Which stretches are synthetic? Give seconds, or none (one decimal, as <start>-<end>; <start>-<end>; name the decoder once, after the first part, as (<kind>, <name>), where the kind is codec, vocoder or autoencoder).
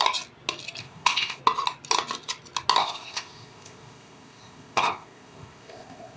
0.8-1.4 (codec, ZipCodec); 2.8-6.2